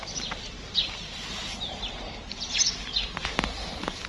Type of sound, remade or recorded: recorded